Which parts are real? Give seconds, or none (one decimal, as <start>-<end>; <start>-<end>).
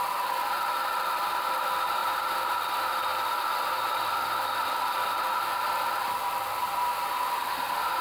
0.0-2.0; 2.5-6.7; 7.3-8.0